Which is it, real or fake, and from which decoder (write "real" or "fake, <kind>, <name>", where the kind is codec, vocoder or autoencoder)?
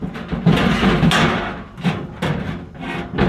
real